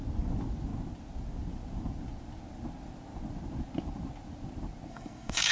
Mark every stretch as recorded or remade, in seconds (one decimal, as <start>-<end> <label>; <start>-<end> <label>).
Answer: 0.0-4.9 recorded; 4.9-5.5 remade